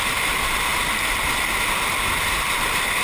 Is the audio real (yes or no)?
no